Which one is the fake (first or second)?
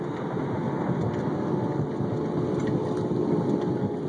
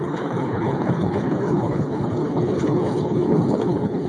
second